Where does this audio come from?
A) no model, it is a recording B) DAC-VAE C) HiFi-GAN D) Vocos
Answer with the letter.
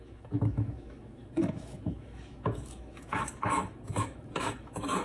B